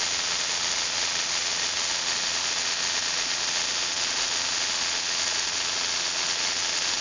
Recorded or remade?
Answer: remade